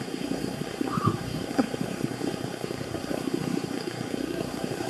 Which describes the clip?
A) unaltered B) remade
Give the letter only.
B